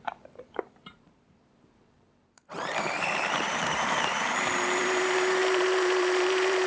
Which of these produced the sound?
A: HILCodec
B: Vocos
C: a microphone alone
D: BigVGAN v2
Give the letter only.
D